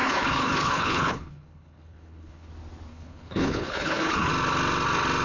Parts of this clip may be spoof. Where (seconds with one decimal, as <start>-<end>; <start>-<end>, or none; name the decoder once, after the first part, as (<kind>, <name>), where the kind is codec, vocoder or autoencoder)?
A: 0.0-2.5 (codec, HILCodec); 2.9-4.3